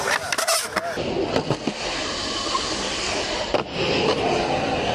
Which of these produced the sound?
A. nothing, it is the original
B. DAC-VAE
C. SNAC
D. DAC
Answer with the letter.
A